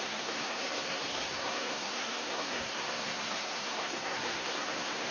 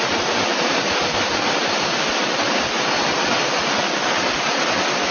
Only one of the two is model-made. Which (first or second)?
first